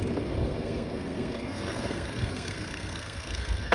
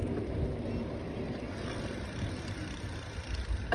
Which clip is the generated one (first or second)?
first